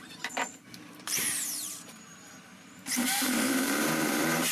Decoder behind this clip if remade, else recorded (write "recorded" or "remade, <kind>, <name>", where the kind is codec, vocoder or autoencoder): remade, vocoder, BigVGAN v2